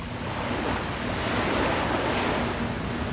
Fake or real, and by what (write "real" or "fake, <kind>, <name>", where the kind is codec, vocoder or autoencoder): real